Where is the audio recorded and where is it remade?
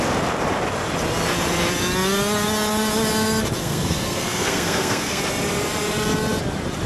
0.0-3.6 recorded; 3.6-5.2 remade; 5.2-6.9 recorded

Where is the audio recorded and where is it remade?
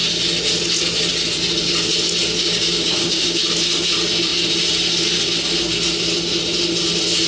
0.0-2.4 recorded; 2.4-3.4 remade; 3.4-7.3 recorded